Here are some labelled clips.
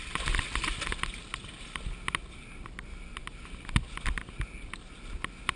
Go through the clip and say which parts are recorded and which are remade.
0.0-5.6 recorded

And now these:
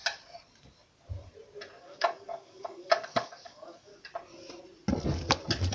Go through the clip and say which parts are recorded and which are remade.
0.0-1.8 recorded; 1.8-3.9 remade; 3.9-5.7 recorded

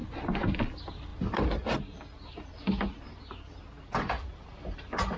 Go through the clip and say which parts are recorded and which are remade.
0.0-5.2 recorded

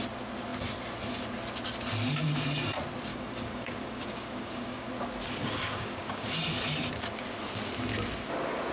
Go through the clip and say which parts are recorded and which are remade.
0.0-3.1 recorded; 3.1-4.9 remade; 4.9-5.4 recorded; 5.4-6.3 remade; 6.3-8.7 recorded

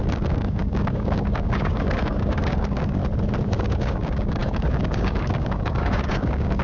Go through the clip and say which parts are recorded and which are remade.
0.0-3.0 remade; 3.0-3.5 recorded; 3.5-6.6 remade

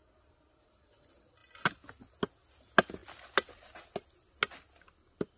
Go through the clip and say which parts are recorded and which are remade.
0.0-5.4 recorded